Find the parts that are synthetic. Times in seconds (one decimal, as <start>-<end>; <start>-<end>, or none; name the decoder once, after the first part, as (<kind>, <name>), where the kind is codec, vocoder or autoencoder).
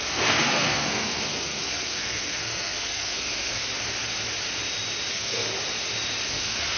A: 0.0-3.7 (codec, SNAC); 5.1-5.5; 6.3-6.8